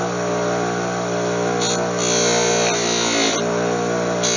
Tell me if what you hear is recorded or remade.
recorded